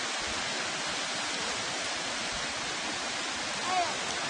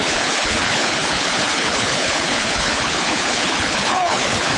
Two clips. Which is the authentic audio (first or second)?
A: first